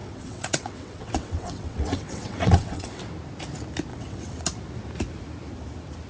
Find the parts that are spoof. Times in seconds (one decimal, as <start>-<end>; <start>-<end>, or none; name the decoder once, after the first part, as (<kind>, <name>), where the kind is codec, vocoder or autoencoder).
0.0-3.0 (vocoder, WaveNeXt); 3.9-4.4